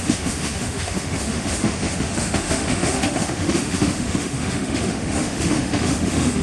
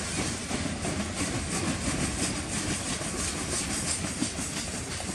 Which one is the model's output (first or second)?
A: first